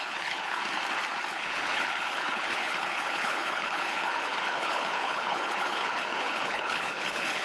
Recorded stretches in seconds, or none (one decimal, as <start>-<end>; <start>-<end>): 0.6-1.3